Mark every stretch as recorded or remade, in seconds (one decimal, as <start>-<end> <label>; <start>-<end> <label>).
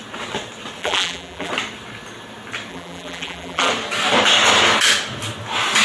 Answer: 0.0-0.8 recorded; 0.8-1.5 remade; 1.5-2.7 recorded; 2.7-3.7 remade; 3.7-5.8 recorded